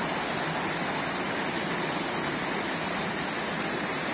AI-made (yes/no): no